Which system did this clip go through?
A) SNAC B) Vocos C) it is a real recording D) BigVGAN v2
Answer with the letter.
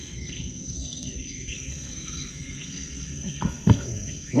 A